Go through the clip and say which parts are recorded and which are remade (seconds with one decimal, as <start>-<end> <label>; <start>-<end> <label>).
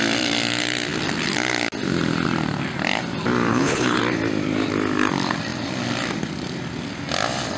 0.0-3.5 recorded; 3.5-4.0 remade; 4.0-7.6 recorded